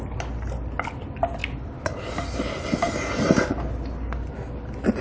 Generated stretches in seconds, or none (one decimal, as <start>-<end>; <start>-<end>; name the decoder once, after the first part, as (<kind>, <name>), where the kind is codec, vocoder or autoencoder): none